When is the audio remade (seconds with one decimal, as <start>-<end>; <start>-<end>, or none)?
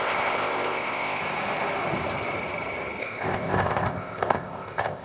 0.0-1.2; 3.0-5.0